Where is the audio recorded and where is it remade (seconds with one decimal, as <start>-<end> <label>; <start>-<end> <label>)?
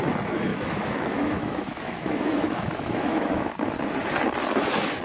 0.0-0.5 recorded; 0.5-3.5 remade; 3.5-5.0 recorded